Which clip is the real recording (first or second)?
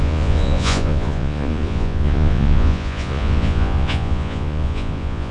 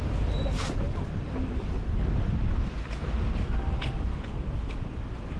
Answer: second